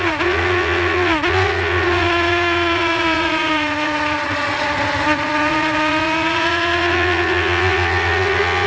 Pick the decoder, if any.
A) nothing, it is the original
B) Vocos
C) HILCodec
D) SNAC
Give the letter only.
B